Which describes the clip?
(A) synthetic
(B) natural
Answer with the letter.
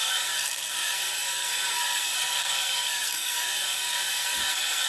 A